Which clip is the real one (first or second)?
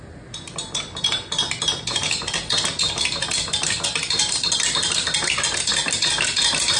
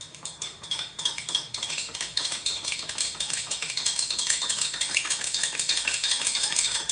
first